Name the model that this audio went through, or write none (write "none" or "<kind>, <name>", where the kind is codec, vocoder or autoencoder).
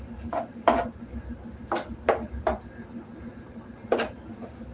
none